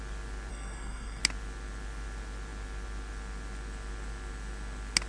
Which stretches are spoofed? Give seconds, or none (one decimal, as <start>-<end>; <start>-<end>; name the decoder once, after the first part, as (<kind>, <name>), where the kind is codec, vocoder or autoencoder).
0.5-1.2 (codec, SNAC)